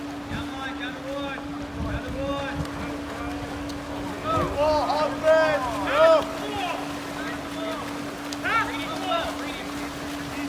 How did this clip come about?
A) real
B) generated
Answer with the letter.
A